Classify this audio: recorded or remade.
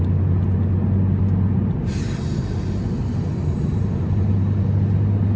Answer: recorded